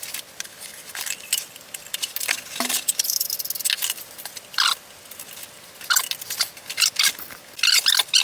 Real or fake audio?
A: real